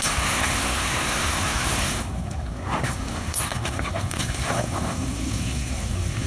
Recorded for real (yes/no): no